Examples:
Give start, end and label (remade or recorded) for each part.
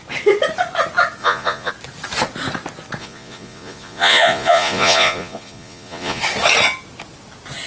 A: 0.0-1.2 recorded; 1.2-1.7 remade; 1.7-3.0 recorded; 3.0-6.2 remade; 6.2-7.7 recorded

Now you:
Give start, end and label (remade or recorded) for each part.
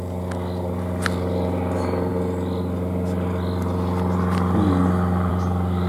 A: 0.0-5.9 recorded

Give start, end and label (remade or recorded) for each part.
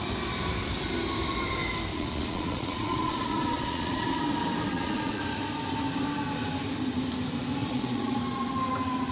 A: 0.0-1.9 recorded; 1.9-4.2 remade; 4.2-4.7 recorded; 4.7-5.2 remade; 5.2-7.6 recorded; 7.6-8.2 remade; 8.2-9.1 recorded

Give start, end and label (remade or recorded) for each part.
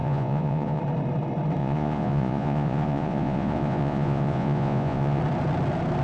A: 0.0-0.8 remade; 0.8-1.6 recorded; 1.6-5.2 remade; 5.2-6.0 recorded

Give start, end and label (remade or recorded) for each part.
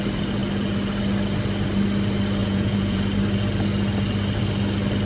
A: 0.0-2.4 recorded; 2.4-3.0 remade; 3.0-5.1 recorded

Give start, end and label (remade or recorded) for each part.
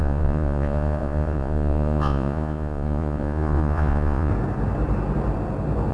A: 0.0-4.3 remade; 4.3-5.9 recorded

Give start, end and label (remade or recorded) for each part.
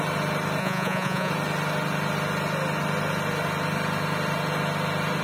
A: 0.0-0.6 recorded; 0.6-1.3 remade; 1.3-5.2 recorded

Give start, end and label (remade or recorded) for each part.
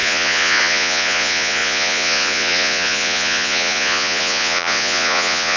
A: 0.0-5.6 remade